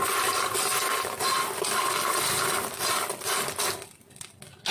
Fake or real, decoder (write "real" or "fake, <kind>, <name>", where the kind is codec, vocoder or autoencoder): real